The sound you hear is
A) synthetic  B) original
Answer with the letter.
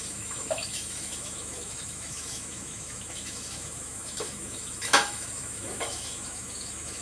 A